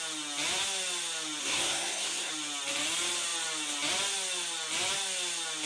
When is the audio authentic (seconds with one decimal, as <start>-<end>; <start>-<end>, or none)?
0.0-1.4; 2.3-5.7